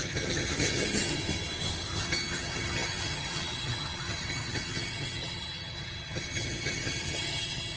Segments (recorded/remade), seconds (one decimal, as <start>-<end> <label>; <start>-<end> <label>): 0.0-1.2 remade; 1.2-2.0 recorded; 2.0-7.8 remade